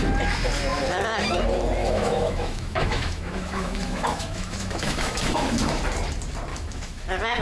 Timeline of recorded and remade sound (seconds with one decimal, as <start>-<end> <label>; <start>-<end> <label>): 0.0-1.8 recorded; 1.8-5.8 remade; 5.8-6.5 recorded; 6.5-7.0 remade; 7.0-7.4 recorded